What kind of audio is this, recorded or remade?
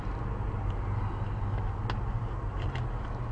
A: recorded